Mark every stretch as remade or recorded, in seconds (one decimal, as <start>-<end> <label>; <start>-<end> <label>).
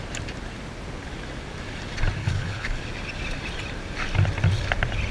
0.0-2.2 recorded; 2.2-2.8 remade; 2.8-5.1 recorded